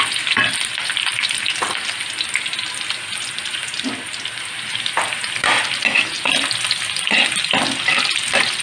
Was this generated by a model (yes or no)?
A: no